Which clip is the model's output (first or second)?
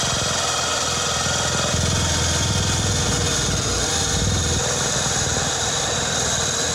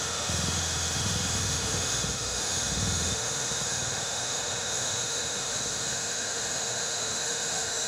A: second